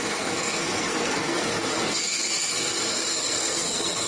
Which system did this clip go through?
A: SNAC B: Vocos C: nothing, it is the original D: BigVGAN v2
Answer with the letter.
A